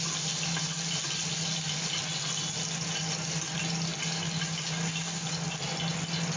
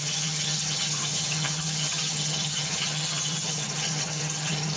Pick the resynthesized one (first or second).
second